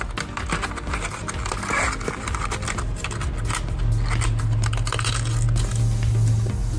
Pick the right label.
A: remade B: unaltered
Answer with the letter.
B